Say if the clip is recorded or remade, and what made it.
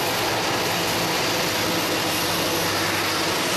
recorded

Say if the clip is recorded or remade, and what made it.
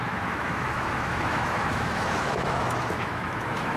remade, autoencoder, DAC-VAE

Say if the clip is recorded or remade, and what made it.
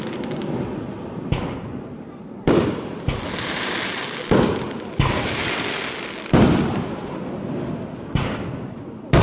recorded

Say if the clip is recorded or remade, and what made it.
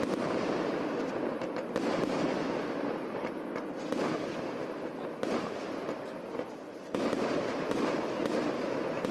recorded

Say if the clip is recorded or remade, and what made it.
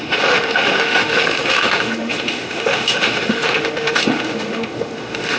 remade, autoencoder, DAC-VAE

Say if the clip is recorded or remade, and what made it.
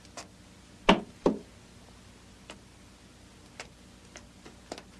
recorded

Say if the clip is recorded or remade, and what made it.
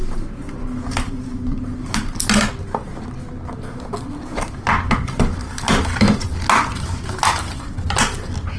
recorded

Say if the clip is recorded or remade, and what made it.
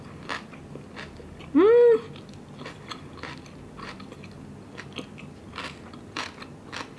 recorded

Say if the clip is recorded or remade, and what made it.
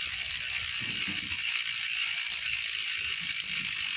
recorded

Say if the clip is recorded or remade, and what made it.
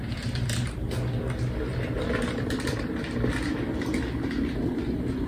recorded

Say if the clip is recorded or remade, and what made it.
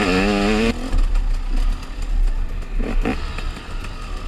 recorded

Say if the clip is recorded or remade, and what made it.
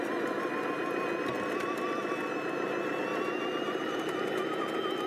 recorded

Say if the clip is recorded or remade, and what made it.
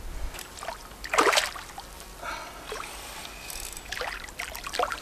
recorded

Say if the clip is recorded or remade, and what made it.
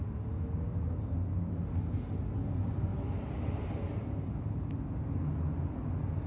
recorded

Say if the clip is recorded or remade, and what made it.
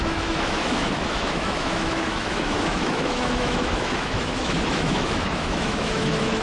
remade, autoencoder, DAC-VAE